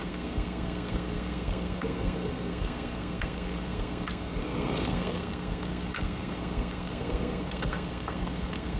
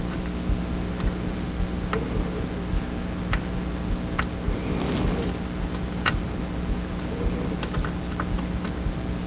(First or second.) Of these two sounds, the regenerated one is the first